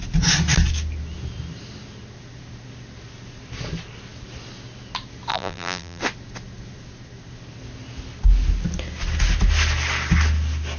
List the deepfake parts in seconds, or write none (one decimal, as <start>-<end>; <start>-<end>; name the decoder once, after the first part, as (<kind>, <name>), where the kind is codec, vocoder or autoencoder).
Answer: 5.3-6.0 (vocoder, BigVGAN v2)